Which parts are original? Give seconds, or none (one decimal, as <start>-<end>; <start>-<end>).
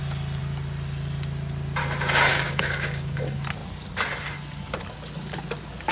0.0-2.3; 3.2-5.9